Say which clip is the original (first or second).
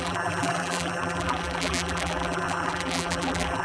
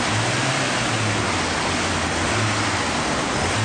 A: second